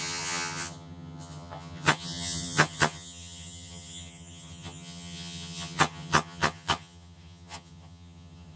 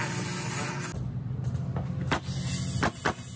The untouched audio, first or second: second